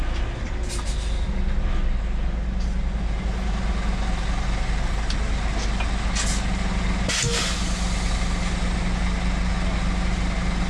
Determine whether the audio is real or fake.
real